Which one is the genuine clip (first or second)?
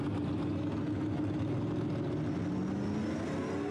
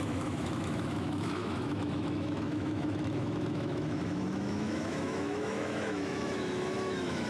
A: first